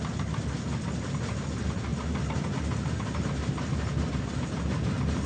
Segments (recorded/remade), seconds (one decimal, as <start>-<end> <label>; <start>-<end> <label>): 0.0-5.3 recorded